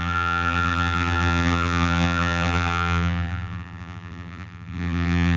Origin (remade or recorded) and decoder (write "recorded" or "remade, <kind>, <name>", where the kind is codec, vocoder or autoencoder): remade, vocoder, BigVGAN v2